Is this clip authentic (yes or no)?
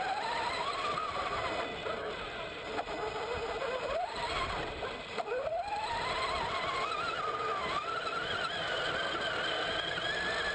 yes